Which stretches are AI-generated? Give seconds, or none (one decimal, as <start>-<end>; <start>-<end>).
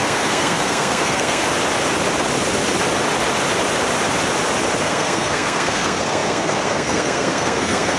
0.0-1.4; 4.8-8.0